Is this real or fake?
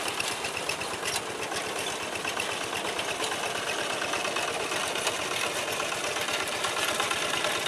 real